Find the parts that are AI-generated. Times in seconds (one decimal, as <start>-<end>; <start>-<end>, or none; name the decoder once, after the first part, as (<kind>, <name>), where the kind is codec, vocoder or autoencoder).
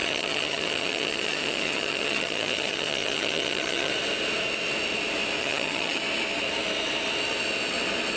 0.0-3.9 (vocoder, HiFi-GAN); 5.4-6.0